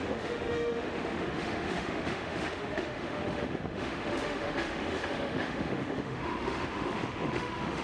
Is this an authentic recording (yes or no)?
no